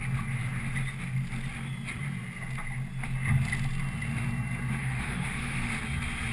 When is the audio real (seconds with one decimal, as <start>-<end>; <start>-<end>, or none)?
0.0-4.8; 5.7-6.3